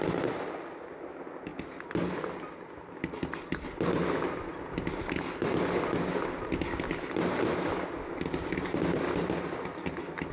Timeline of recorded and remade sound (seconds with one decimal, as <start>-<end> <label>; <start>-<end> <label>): 0.0-10.3 recorded